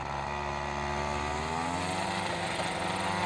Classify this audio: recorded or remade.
recorded